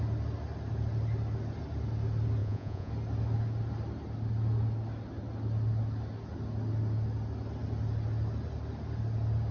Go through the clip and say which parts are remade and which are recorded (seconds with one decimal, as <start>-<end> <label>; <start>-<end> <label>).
0.0-2.4 recorded; 2.4-2.9 remade; 2.9-9.5 recorded